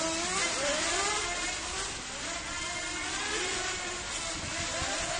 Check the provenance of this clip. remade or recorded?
recorded